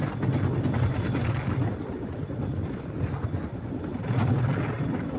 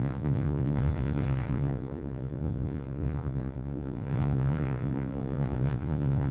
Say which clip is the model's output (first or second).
second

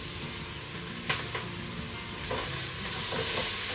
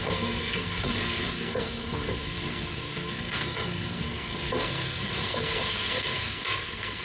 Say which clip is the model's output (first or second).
second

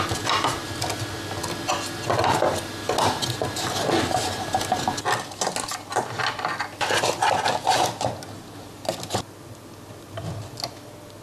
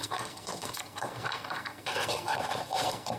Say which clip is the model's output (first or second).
second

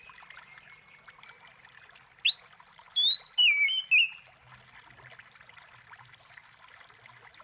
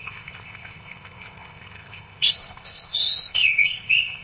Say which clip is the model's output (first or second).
second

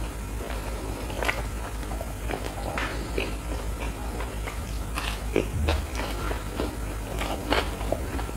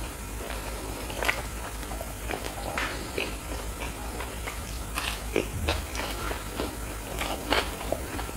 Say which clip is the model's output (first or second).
second